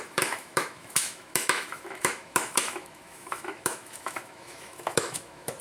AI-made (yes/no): yes